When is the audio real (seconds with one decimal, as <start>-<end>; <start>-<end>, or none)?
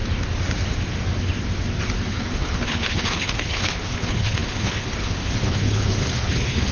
0.0-2.1